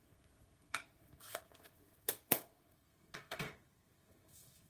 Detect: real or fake fake